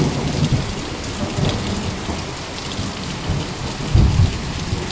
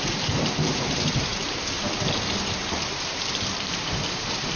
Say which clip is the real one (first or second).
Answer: first